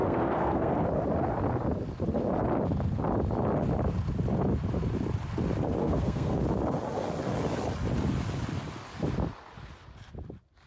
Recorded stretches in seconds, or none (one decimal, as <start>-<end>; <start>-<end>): 0.7-5.8; 6.4-10.7